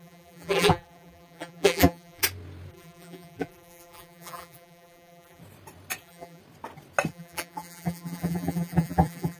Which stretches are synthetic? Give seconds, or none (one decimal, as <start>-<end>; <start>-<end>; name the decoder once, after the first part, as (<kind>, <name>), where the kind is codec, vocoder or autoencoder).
0.0-2.2 (vocoder, BigVGAN v2); 2.7-5.4; 6.0-6.4; 7.1-9.4